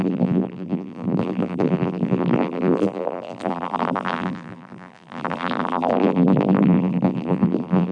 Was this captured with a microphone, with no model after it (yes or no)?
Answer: no